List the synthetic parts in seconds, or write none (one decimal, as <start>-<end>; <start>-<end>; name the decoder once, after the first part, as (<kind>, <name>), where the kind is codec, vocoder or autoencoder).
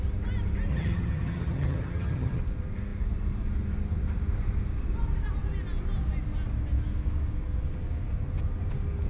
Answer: 0.7-2.4 (vocoder, HiFi-GAN)